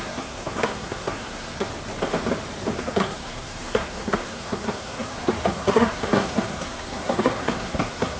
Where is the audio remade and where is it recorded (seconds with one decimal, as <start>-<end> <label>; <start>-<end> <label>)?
0.0-1.7 remade; 1.7-2.8 recorded; 2.8-8.2 remade